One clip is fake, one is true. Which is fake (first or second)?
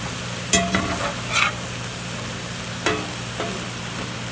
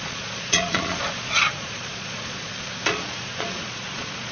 second